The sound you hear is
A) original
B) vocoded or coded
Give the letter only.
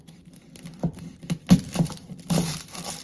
A